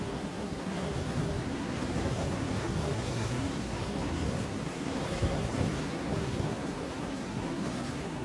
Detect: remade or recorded remade